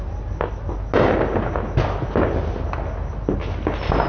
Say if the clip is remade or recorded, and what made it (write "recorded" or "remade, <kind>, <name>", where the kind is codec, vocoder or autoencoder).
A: recorded